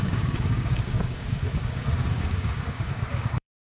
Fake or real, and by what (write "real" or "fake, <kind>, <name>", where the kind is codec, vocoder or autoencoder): fake, codec, DAC